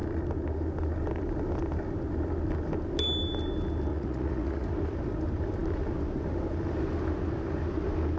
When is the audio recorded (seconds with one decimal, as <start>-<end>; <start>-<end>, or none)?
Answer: 0.0-3.9; 4.7-8.2

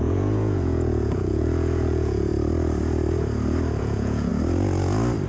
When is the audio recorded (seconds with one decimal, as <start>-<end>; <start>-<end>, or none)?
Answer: 2.3-3.8; 4.3-5.3